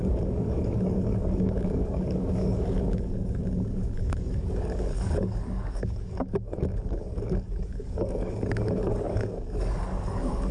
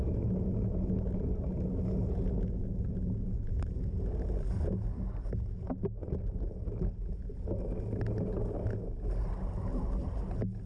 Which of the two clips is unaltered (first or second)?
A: second